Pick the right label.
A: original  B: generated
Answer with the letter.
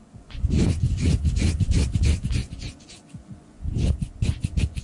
B